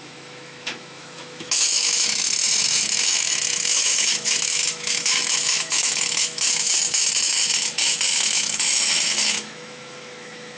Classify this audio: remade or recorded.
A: remade